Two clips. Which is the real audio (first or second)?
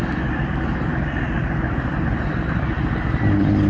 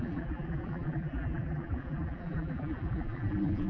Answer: first